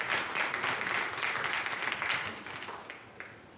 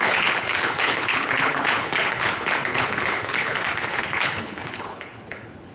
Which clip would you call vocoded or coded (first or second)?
second